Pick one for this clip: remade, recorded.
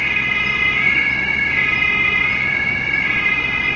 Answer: recorded